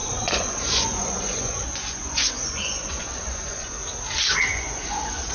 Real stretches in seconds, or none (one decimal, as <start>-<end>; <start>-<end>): 3.8-4.4